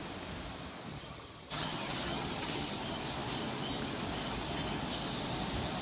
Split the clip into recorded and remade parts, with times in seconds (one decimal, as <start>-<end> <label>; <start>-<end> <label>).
0.0-0.9 recorded; 0.9-2.8 remade; 2.8-5.8 recorded